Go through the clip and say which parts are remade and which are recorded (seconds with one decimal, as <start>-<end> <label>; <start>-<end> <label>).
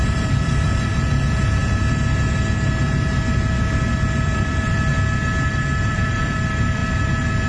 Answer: 0.0-1.6 remade; 1.6-4.1 recorded; 4.1-4.9 remade; 4.9-5.5 recorded; 5.5-6.8 remade; 6.8-7.5 recorded